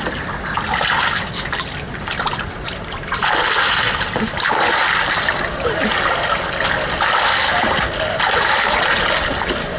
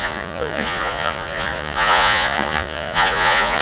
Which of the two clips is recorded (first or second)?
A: first